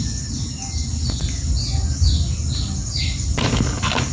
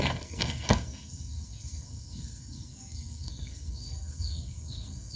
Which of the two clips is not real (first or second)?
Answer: second